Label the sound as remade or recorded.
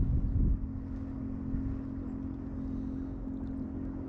recorded